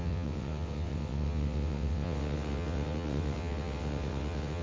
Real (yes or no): no